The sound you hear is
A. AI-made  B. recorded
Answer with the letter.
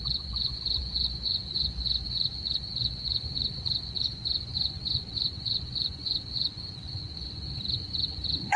A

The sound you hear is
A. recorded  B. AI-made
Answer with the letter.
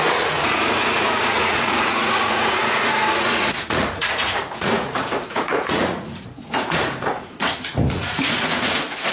B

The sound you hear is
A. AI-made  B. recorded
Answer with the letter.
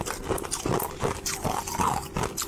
B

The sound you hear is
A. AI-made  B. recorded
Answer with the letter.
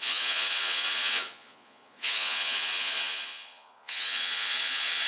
A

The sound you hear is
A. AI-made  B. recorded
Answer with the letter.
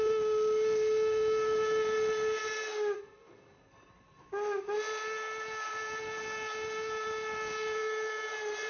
B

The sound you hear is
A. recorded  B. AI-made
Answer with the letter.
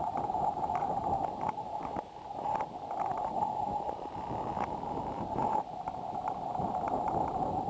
A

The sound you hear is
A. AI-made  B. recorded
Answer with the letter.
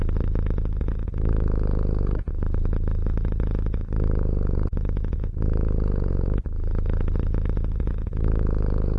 B